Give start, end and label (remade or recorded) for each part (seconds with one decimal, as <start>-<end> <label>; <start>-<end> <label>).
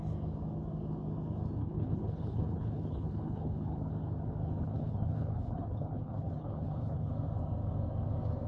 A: 0.0-1.6 recorded; 1.6-3.9 remade; 3.9-4.6 recorded; 4.6-7.1 remade; 7.1-8.5 recorded